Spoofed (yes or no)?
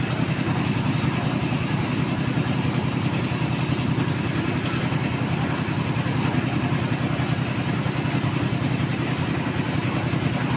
no